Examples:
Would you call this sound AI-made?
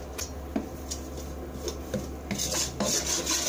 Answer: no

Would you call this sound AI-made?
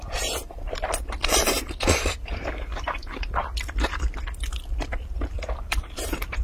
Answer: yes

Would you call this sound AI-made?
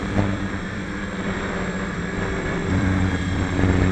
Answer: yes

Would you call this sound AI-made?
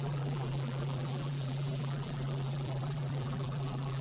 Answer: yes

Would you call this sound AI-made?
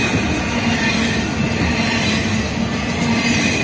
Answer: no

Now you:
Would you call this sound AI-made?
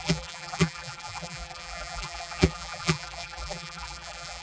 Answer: yes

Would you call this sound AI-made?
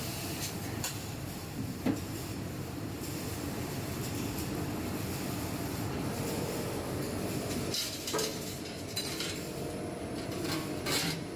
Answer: yes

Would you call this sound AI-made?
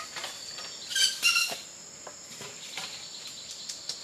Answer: no